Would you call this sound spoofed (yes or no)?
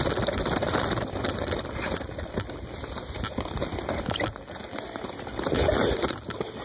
no